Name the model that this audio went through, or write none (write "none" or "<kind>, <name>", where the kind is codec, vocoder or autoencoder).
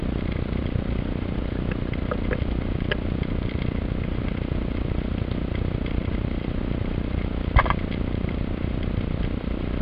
vocoder, BigVGAN v2